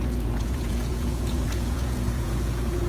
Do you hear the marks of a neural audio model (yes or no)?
yes